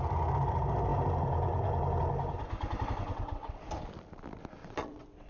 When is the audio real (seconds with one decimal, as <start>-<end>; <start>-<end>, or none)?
0.0-3.0; 3.6-4.6